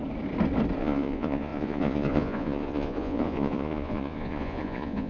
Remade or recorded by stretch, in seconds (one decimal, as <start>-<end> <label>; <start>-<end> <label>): 0.0-0.8 recorded; 0.8-5.1 remade